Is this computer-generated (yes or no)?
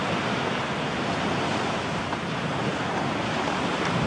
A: no